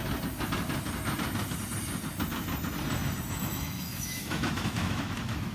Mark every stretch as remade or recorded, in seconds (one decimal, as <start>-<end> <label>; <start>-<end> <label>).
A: 0.0-3.3 recorded; 3.3-5.5 remade